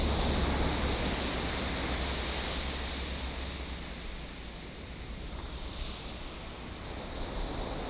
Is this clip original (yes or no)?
yes